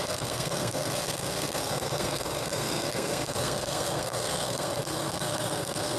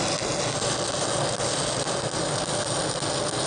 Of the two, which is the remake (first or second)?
first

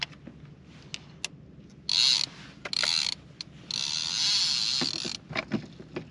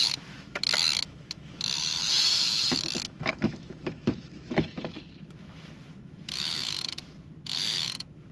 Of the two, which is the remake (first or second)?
second